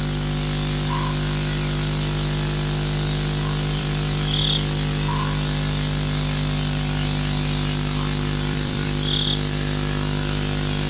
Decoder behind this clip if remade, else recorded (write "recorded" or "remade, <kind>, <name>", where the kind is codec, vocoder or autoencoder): remade, vocoder, BigVGAN v2